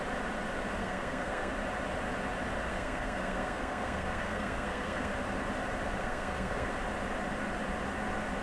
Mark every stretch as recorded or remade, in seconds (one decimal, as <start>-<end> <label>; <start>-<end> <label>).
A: 0.0-0.8 recorded; 0.8-1.5 remade; 1.5-2.7 recorded; 2.7-5.1 remade; 5.1-6.0 recorded; 6.0-6.7 remade; 6.7-8.4 recorded